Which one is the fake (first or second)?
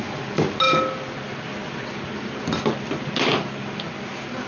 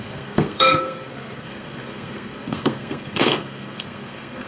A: second